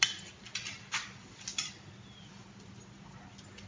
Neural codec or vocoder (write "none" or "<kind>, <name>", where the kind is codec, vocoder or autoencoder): none